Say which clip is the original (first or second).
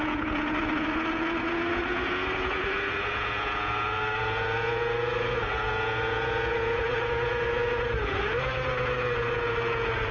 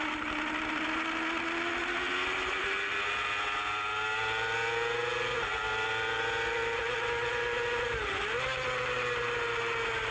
second